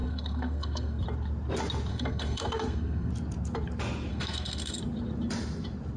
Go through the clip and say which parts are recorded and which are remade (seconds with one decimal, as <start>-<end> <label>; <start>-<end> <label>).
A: 0.0-1.0 remade; 1.0-1.9 recorded; 1.9-3.1 remade; 3.1-4.1 recorded; 4.1-4.8 remade; 4.8-6.0 recorded